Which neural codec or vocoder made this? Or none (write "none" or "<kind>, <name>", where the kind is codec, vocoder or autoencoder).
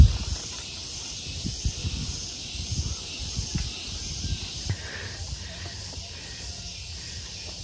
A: none